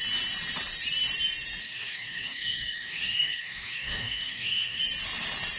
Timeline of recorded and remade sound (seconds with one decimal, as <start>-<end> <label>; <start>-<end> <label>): 0.0-1.6 recorded; 1.6-4.8 remade; 4.8-5.6 recorded